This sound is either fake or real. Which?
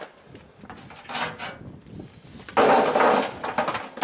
real